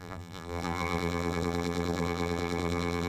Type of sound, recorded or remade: remade